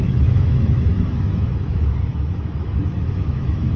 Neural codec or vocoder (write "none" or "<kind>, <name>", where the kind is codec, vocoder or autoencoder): autoencoder, DAC-VAE